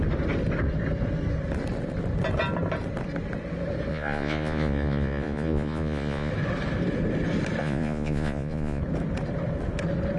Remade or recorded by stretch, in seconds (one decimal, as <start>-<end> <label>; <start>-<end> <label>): 0.0-3.9 recorded; 3.9-6.3 remade; 6.3-7.6 recorded; 7.6-8.8 remade; 8.8-10.2 recorded